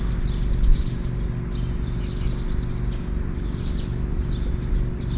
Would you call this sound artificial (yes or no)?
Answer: no